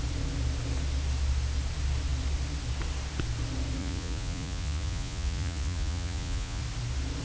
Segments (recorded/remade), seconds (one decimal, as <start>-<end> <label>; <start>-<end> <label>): 0.0-3.8 recorded; 3.8-6.6 remade; 6.6-7.2 recorded